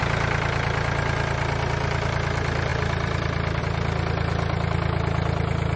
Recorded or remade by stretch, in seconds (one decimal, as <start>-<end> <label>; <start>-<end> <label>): 0.0-2.7 recorded; 2.7-3.6 remade; 3.6-5.8 recorded